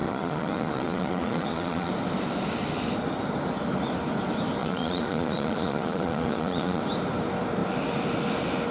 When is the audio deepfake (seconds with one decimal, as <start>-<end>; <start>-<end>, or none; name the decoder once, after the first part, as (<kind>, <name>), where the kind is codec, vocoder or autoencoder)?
0.0-1.9 (vocoder, Vocos); 4.6-6.8